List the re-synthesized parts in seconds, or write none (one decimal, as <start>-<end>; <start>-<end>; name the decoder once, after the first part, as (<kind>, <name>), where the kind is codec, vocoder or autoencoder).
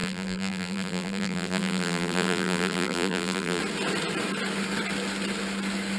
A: 0.0-3.6 (vocoder, BigVGAN v2)